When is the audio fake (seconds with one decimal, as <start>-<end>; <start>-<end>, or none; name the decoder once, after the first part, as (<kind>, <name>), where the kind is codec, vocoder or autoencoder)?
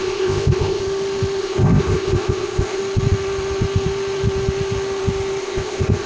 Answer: 0.0-0.8 (codec, ZipCodec); 1.4-2.8; 5.4-6.1